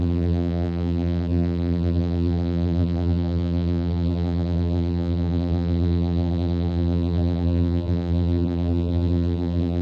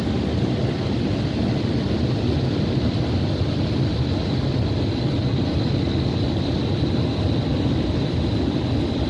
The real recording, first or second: second